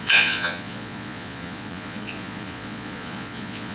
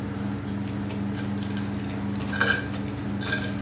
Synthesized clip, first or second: first